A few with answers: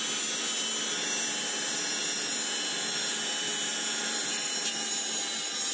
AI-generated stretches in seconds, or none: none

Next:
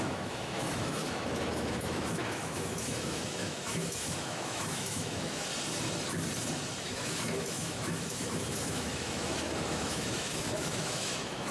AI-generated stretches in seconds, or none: 0.0-5.5 (autoencoder, DAC-VAE); 6.8-11.5

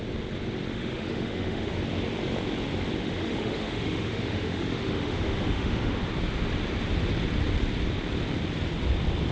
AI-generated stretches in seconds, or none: 0.7-1.8 (autoencoder, DAC-VAE); 3.0-6.0

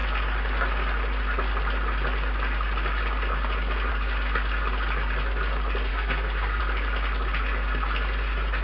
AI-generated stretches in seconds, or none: 5.9-6.6 (codec, SNAC)

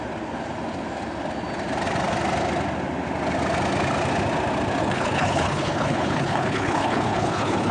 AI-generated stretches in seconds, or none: 4.8-7.7 (codec, HILCodec)

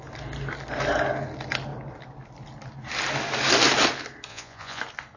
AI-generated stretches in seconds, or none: 4.3-4.8 (vocoder, Vocos)

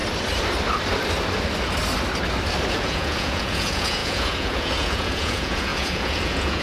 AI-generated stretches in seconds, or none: 2.7-6.6 (vocoder, Vocos)

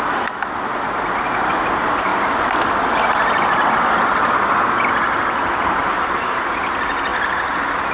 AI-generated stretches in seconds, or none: none